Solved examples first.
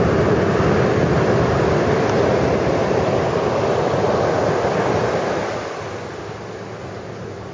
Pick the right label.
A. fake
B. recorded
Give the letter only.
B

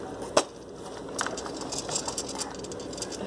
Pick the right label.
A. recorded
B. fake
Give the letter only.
A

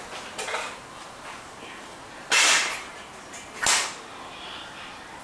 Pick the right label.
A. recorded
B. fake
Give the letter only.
A